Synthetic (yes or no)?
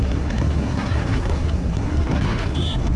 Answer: yes